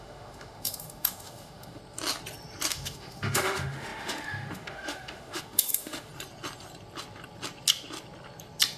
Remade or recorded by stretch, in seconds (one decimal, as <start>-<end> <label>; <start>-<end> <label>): 0.0-1.8 remade; 1.8-2.7 recorded; 2.7-6.1 remade; 6.1-8.8 recorded